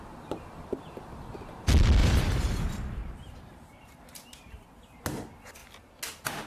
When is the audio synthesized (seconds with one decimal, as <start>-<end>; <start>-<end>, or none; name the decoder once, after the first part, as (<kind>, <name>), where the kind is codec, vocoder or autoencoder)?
2.0-5.0 (vocoder, BigVGAN v2)